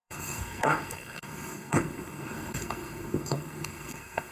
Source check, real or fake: fake